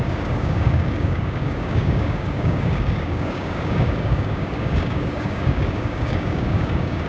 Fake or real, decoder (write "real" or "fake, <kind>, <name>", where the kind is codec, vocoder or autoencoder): fake, codec, DAC